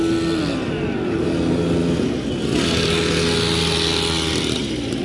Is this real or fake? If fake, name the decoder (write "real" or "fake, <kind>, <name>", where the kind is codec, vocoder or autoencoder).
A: real